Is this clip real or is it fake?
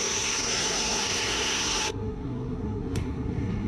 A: fake